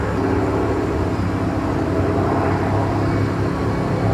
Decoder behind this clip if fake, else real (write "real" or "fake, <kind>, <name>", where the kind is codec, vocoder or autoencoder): real